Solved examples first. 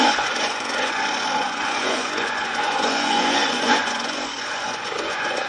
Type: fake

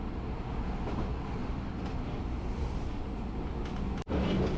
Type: real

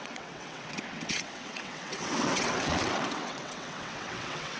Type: fake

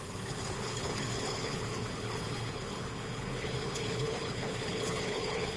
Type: fake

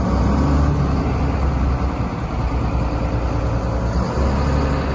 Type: real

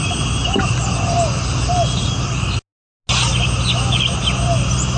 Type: real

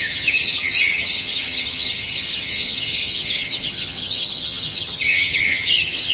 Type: fake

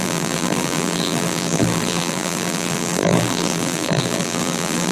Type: fake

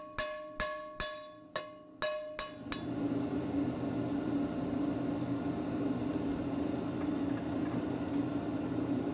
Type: real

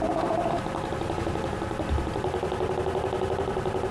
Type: real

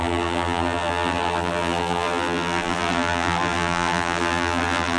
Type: fake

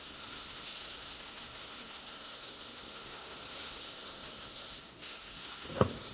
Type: fake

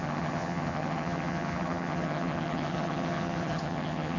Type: fake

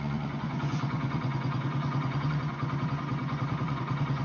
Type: fake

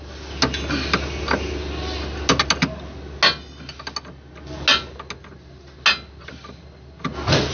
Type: real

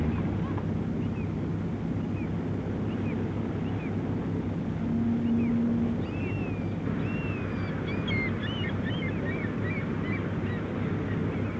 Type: real